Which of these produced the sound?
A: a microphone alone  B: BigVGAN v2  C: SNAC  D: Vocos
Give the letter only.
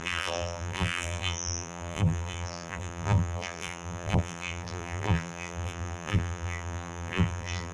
B